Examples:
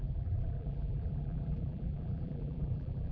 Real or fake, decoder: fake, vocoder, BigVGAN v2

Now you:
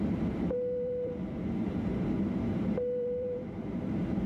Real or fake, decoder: fake, vocoder, BigVGAN v2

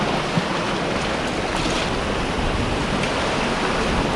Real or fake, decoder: real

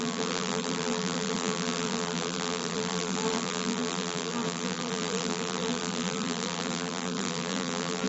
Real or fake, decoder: fake, vocoder, BigVGAN v2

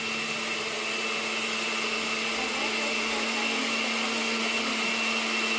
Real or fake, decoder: real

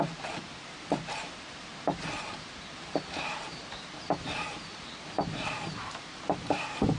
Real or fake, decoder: fake, vocoder, BigVGAN v2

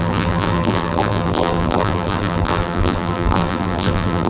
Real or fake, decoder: fake, vocoder, BigVGAN v2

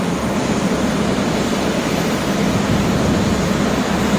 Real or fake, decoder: fake, vocoder, BigVGAN v2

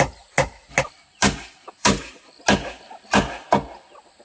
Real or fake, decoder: real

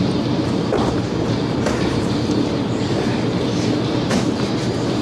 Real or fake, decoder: fake, vocoder, BigVGAN v2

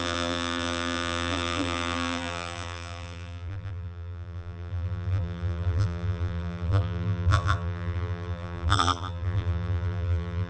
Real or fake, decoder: fake, vocoder, BigVGAN v2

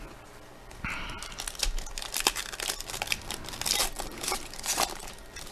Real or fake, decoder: real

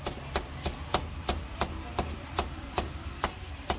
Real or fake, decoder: real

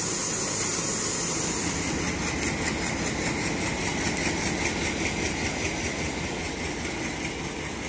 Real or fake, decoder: real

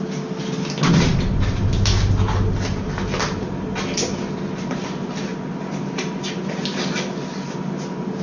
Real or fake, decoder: real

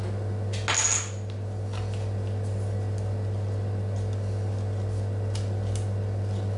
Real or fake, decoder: real